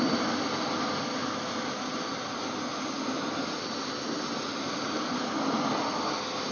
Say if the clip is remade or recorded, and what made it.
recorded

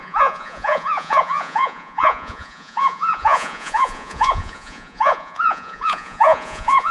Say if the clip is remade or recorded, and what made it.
remade, vocoder, Vocos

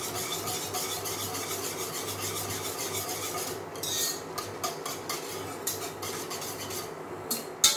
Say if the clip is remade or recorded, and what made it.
recorded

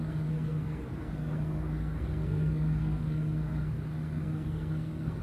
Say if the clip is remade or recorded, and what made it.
remade, codec, SNAC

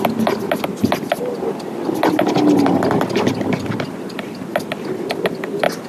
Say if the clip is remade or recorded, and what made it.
recorded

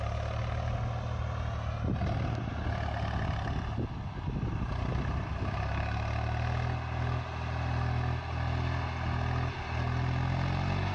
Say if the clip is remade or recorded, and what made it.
recorded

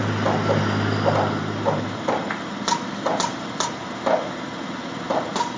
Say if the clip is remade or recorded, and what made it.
recorded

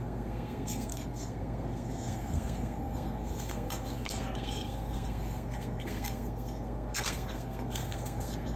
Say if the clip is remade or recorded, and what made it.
remade, codec, SNAC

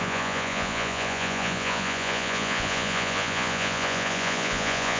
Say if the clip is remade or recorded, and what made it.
remade, vocoder, Vocos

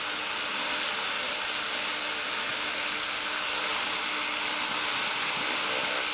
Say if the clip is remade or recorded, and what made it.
recorded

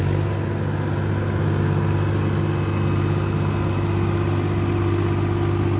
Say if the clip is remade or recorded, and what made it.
recorded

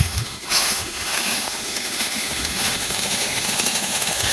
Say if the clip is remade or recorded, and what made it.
remade, autoencoder, DAC-VAE